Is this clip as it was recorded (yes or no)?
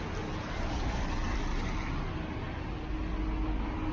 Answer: yes